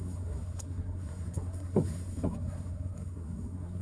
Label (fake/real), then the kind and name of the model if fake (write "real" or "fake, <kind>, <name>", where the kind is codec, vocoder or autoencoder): fake, codec, SNAC